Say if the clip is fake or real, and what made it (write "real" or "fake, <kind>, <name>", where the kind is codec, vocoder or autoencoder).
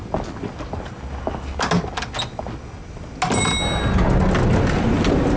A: real